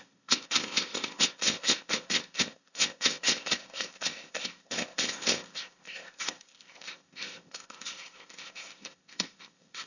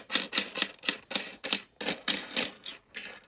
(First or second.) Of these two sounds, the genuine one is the second